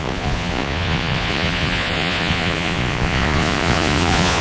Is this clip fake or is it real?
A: fake